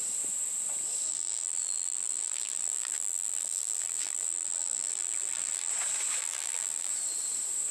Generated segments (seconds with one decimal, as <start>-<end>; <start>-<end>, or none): 1.1-5.7; 6.2-6.9